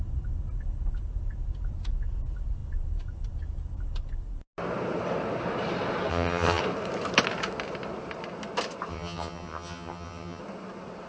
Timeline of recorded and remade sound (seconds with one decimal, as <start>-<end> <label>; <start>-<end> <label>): 0.0-6.1 recorded; 6.1-6.6 remade; 6.6-8.9 recorded; 8.9-10.4 remade; 10.4-11.1 recorded